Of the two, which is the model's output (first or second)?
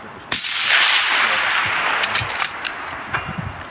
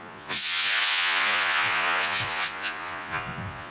second